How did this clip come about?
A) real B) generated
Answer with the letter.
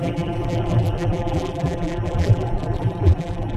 B